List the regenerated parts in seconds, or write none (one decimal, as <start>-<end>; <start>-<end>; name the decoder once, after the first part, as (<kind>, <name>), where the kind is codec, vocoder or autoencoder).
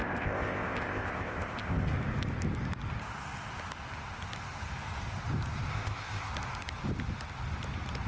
0.0-1.9 (codec, ZipCodec); 5.7-6.3